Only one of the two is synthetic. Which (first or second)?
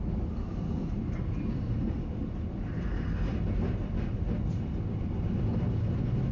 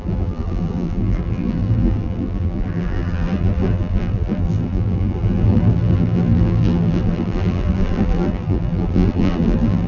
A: second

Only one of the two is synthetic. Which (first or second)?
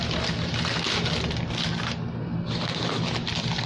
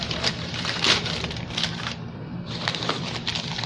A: second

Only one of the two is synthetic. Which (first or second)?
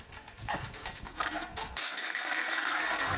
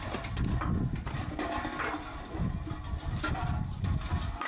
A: first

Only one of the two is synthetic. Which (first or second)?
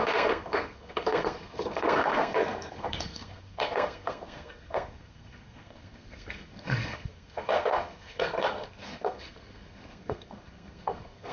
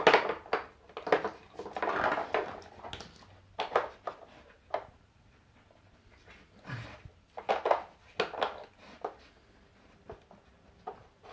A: first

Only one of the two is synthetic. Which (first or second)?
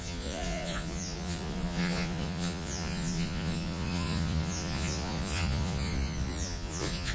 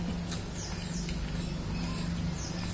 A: first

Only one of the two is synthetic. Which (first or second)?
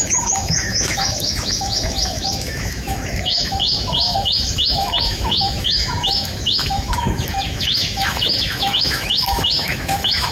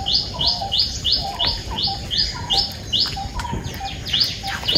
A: first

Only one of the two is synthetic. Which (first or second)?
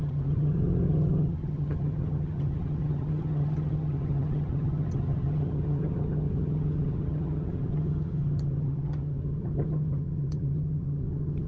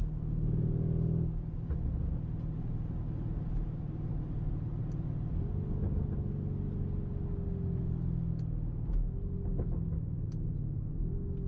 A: first